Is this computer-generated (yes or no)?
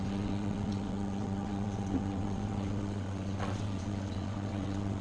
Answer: yes